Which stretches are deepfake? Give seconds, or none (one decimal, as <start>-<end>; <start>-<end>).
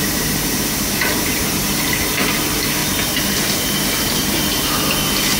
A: none